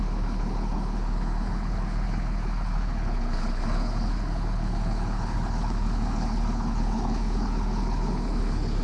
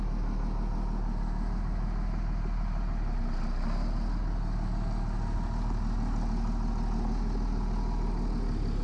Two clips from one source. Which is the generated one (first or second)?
first